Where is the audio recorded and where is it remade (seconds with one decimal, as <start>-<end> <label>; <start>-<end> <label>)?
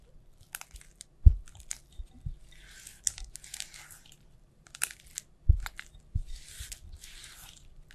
0.0-7.9 recorded